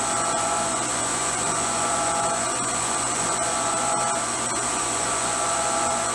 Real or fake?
fake